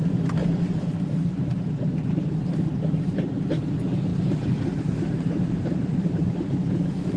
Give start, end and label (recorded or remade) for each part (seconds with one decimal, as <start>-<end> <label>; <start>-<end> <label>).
0.0-0.4 recorded; 0.4-1.1 remade; 1.1-2.2 recorded; 2.2-3.3 remade; 3.3-4.1 recorded; 4.1-7.2 remade